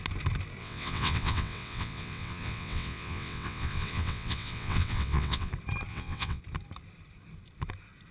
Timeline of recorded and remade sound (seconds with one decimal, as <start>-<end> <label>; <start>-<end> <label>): 0.0-0.6 recorded; 0.6-5.5 remade; 5.5-5.9 recorded; 5.9-6.4 remade; 6.4-8.1 recorded